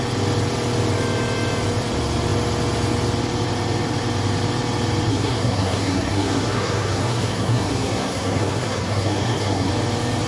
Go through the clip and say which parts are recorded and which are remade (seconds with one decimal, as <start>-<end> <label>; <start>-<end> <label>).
0.0-5.1 recorded; 5.1-9.7 remade; 9.7-10.3 recorded